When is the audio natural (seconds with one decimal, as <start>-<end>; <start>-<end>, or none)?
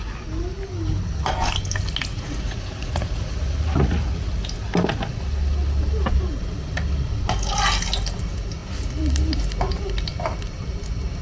0.0-2.1; 4.3-11.2